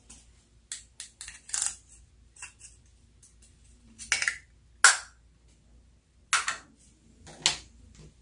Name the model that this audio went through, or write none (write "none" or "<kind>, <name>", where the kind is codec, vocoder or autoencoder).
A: none